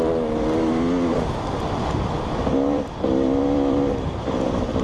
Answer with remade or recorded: recorded